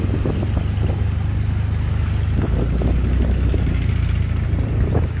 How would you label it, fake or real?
real